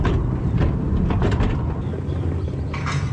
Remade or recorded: recorded